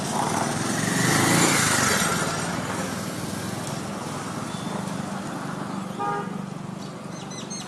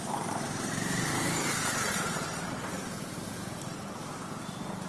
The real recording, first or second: first